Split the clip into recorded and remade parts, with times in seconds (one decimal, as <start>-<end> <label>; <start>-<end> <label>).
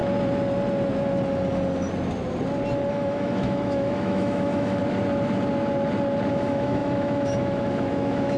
0.0-2.9 recorded; 2.9-4.8 remade; 4.8-6.3 recorded; 6.3-8.4 remade